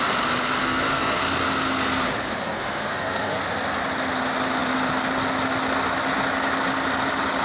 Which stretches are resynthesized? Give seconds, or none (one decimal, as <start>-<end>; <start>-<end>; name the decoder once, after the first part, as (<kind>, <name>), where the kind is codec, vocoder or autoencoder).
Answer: 0.6-1.2 (codec, SNAC); 2.4-3.4